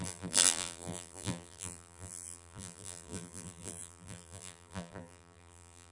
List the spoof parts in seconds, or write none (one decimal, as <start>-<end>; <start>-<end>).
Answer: 0.0-5.9